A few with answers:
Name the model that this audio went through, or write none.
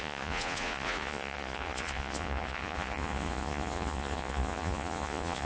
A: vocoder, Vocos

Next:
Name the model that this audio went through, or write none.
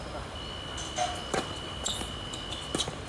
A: none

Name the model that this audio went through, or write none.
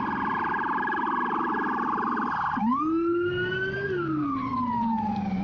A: none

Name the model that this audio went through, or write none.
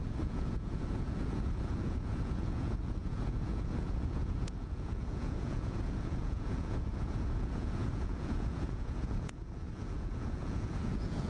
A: vocoder, Vocos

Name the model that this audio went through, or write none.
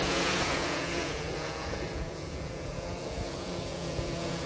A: vocoder, Vocos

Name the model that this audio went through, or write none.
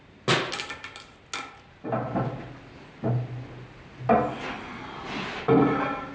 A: none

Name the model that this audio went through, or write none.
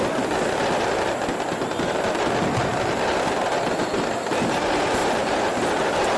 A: none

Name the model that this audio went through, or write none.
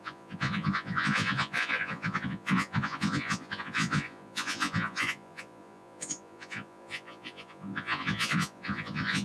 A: vocoder, Vocos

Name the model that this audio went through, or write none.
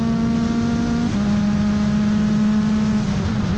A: none